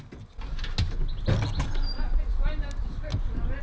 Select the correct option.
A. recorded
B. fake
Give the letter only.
A